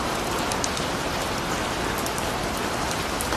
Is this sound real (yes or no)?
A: yes